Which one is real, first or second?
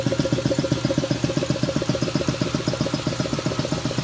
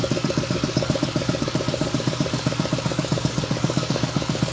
first